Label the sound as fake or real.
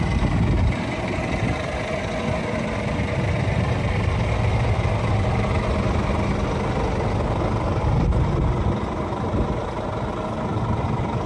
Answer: real